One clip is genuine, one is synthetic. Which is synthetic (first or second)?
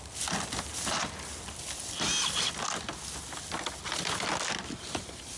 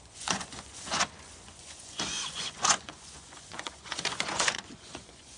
second